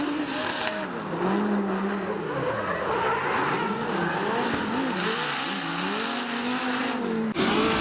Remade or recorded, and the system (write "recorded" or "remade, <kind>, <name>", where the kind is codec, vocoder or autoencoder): recorded